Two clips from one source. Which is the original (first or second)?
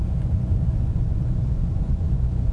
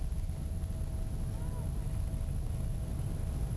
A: second